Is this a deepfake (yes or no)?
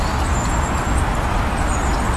no